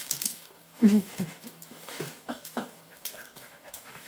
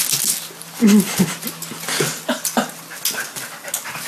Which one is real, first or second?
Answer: second